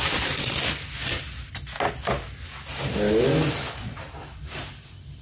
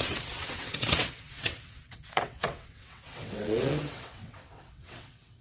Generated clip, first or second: second